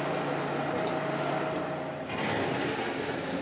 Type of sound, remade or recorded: recorded